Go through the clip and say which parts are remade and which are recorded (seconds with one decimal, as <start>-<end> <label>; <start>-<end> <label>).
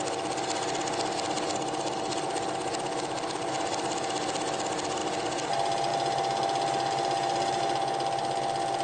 0.0-8.8 recorded